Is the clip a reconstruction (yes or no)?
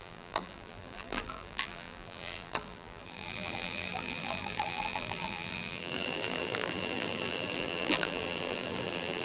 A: yes